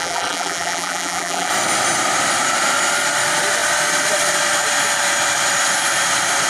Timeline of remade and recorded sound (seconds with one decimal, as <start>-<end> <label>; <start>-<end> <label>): 0.0-1.5 remade; 1.5-6.5 recorded